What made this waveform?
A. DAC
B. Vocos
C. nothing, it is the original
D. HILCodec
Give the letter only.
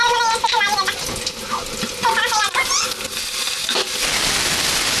C